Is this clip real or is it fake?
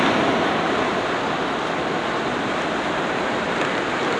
real